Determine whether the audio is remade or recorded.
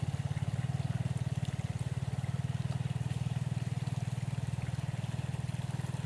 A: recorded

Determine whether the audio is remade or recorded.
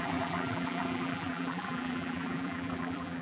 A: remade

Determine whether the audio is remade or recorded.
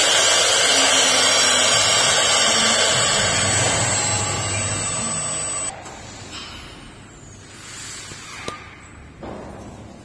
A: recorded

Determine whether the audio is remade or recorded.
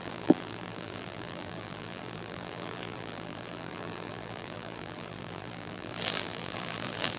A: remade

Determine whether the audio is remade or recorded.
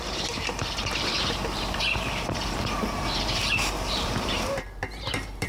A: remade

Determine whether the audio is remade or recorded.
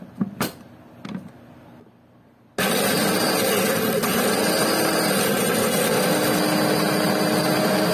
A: recorded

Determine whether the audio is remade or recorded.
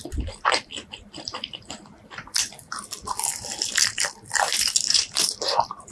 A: remade